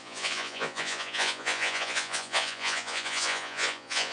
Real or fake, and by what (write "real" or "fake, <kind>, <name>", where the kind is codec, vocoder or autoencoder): fake, vocoder, Vocos